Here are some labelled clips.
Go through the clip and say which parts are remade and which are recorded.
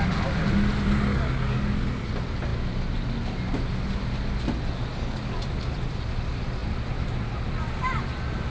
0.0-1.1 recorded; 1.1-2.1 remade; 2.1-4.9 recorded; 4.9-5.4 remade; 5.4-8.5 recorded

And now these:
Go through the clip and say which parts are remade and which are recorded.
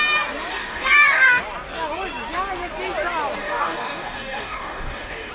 0.0-0.5 recorded; 0.5-1.4 remade; 1.4-3.4 recorded; 3.4-5.3 remade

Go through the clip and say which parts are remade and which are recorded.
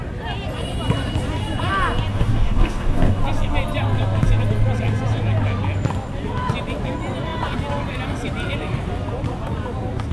0.0-2.1 recorded; 2.1-3.2 remade; 3.2-10.1 recorded